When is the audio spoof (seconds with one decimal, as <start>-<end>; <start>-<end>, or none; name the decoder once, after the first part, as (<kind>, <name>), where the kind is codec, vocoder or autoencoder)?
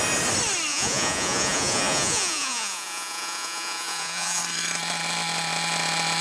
0.7-4.4 (vocoder, Vocos)